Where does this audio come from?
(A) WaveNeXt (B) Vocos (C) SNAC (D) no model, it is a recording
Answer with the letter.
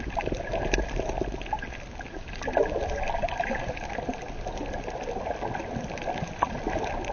D